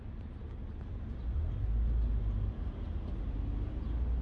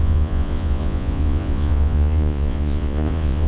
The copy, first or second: second